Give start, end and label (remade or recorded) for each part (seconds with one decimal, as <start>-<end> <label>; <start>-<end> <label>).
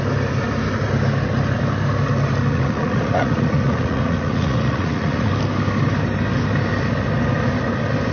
0.0-2.5 recorded; 2.5-5.3 remade; 5.3-8.1 recorded